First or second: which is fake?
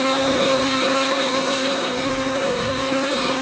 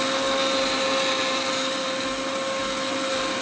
first